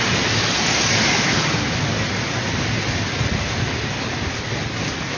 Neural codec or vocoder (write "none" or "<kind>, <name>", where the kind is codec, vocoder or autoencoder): none